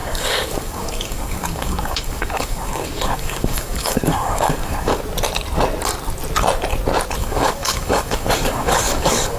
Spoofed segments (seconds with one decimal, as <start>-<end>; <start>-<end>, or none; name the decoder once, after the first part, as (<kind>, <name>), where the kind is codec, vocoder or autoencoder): 0.0-5.0 (codec, DAC); 7.2-9.4

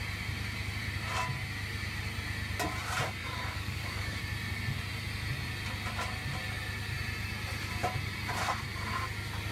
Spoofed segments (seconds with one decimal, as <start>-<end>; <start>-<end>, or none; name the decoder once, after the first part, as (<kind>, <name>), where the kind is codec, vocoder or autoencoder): 3.2-4.2 (codec, DAC)

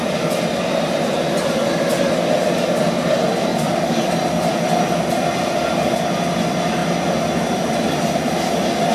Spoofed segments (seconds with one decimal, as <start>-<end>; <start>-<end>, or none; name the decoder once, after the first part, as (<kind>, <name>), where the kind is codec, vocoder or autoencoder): 3.5-4.1 (codec, DAC)